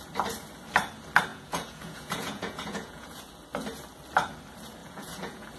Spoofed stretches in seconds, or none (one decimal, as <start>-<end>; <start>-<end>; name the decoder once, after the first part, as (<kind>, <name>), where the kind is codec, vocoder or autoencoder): 1.3-3.3 (vocoder, Vocos); 4.8-5.6